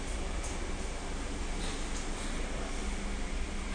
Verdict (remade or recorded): recorded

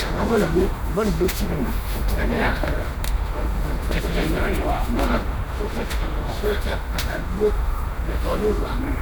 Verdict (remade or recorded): remade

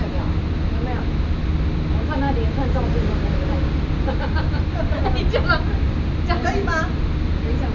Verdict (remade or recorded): recorded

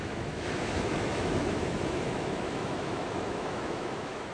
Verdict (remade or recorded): remade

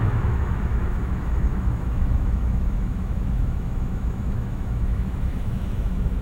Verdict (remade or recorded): remade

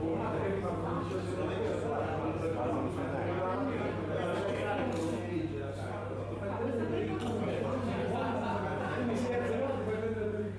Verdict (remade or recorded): recorded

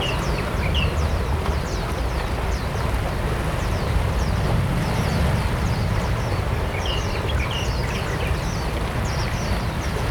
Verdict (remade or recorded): recorded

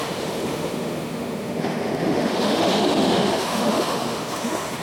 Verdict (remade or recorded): remade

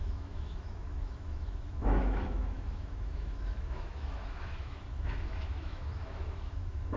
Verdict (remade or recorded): remade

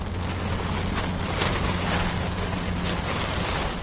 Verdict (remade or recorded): recorded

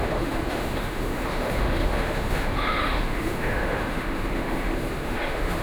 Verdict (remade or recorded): remade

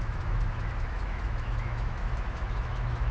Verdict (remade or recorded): remade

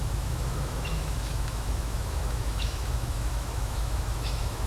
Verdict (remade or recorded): remade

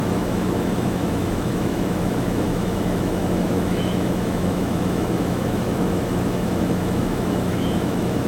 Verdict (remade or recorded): remade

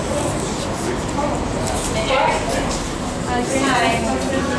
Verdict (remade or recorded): recorded